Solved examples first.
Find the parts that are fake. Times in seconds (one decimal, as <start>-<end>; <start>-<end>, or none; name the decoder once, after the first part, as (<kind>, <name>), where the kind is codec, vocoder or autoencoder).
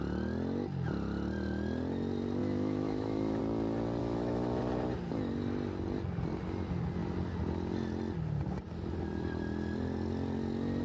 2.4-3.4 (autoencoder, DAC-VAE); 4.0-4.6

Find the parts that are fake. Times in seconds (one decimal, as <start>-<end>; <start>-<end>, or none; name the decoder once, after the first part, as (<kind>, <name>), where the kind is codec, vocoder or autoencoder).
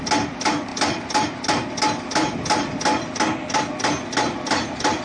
none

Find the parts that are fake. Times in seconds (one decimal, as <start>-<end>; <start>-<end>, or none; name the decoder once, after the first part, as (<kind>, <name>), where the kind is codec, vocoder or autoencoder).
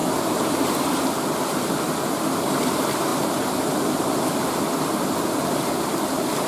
none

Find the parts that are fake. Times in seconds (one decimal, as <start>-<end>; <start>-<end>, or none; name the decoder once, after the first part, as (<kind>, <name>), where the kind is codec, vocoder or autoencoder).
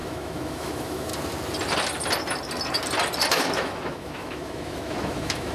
0.0-1.1 (autoencoder, DAC-VAE); 3.3-5.5